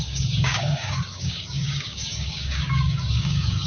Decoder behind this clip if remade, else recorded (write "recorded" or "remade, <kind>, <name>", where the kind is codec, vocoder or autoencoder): remade, codec, DAC